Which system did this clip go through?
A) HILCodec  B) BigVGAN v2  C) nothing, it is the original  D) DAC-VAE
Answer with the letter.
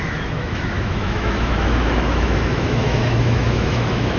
D